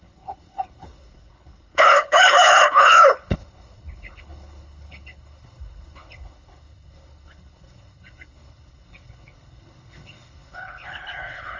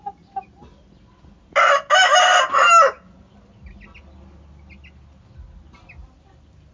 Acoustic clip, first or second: second